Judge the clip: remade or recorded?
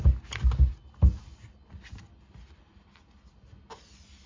recorded